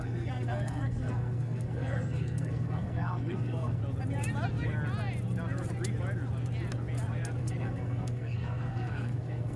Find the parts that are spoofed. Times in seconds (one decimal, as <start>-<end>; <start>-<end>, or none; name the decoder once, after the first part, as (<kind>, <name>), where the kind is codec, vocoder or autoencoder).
0.0-3.8 (codec, SNAC); 7.4-9.6

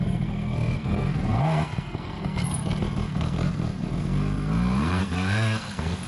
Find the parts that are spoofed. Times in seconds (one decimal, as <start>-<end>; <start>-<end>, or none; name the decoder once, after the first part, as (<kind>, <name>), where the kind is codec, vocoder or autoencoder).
0.0-6.1 (codec, SNAC)

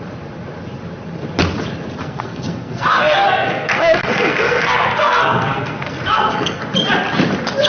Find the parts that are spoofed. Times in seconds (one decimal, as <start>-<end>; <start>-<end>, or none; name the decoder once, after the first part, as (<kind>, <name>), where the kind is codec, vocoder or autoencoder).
2.0-6.6 (codec, SNAC)

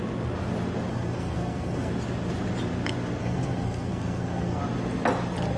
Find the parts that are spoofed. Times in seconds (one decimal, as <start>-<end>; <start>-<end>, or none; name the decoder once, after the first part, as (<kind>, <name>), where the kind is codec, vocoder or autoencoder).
0.9-1.9 (codec, SNAC); 3.2-4.6

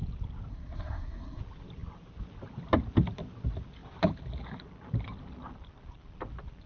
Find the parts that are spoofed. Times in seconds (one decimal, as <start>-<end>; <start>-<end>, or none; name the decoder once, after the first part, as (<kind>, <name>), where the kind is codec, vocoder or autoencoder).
0.5-1.4 (codec, SNAC)

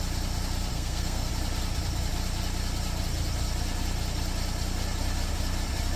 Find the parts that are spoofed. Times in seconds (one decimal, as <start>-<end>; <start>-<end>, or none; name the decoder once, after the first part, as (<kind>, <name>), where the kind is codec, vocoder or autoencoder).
0.7-1.3 (codec, SNAC)